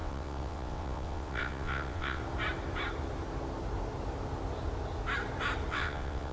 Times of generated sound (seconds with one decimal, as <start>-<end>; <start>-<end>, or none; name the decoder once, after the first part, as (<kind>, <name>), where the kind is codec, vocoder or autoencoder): 0.0-2.2 (vocoder, WaveNeXt); 5.7-6.3